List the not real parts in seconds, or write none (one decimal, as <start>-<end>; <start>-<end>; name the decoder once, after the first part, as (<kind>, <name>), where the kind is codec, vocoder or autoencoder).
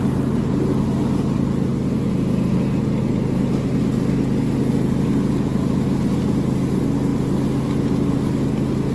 none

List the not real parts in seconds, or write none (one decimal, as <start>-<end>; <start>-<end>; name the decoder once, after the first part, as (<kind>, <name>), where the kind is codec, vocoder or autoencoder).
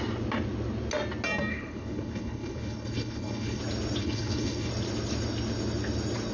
1.5-3.6 (codec, HILCodec); 4.0-4.7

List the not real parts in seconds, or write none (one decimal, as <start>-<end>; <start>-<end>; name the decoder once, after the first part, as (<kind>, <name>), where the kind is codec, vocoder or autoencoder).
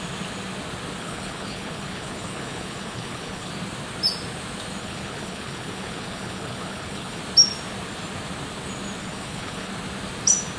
1.0-3.5 (codec, HILCodec); 4.8-7.2; 9.0-9.7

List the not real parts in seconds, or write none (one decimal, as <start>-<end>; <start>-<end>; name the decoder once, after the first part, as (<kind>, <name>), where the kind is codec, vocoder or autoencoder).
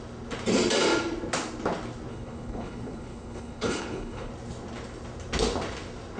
2.1-4.3 (codec, HILCodec)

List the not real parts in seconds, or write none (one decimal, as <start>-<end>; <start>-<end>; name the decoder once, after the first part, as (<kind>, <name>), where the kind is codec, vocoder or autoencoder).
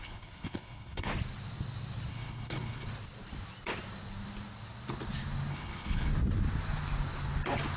0.0-1.1 (codec, HILCodec); 2.1-2.9; 5.5-6.1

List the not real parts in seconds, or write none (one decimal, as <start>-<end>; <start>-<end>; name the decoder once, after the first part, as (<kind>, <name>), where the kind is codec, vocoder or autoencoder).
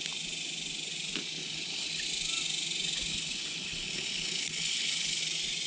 1.4-2.0 (codec, HILCodec); 3.1-5.2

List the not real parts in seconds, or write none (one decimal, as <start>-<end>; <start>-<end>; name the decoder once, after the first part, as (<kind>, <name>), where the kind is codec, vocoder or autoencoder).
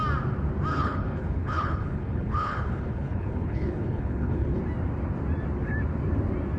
0.7-4.6 (codec, HILCodec)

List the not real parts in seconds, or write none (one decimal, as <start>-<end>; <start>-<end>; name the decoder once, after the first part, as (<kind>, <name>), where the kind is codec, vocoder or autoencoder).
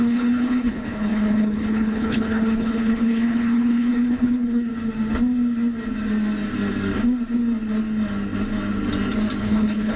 0.0-4.7 (codec, HILCodec); 9.4-10.0